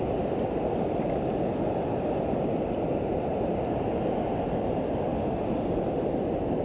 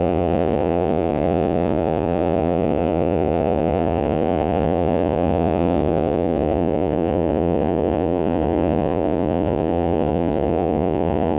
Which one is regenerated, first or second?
second